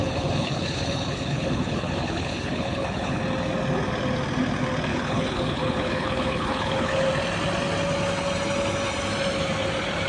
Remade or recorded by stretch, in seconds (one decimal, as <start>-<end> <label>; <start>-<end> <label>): 0.0-3.2 remade; 3.2-4.9 recorded; 4.9-7.1 remade; 7.1-10.1 recorded